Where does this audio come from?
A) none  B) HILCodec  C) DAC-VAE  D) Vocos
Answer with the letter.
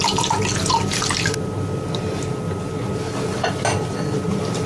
A